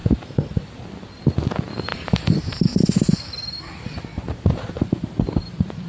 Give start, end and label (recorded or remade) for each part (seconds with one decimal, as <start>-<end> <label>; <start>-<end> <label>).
0.0-1.9 recorded; 1.9-2.8 remade; 2.8-4.1 recorded; 4.1-4.7 remade; 4.7-5.9 recorded